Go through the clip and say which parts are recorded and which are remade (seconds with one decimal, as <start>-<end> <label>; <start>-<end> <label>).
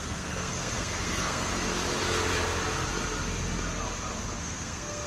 0.0-1.5 remade; 1.5-4.4 recorded; 4.4-5.1 remade